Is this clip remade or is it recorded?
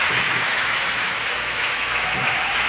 remade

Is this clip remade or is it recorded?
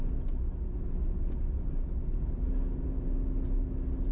recorded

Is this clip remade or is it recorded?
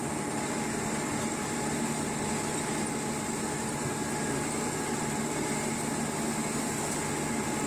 recorded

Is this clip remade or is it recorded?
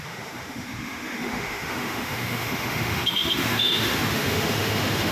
remade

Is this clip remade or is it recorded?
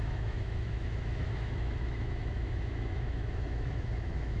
remade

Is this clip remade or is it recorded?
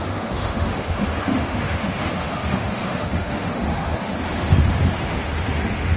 remade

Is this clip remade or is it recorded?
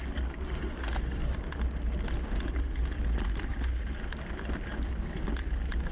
recorded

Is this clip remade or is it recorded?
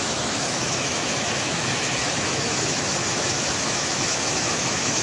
remade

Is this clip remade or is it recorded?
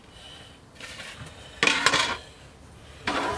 recorded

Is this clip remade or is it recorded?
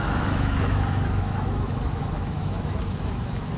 remade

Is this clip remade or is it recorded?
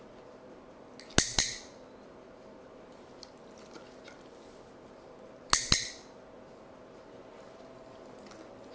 recorded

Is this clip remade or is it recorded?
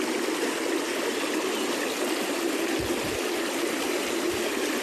recorded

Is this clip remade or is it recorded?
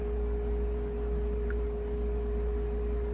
recorded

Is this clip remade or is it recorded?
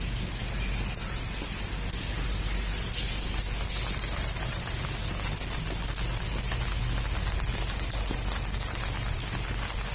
recorded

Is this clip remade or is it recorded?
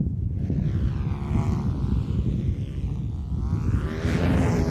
recorded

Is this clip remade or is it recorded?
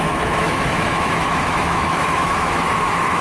remade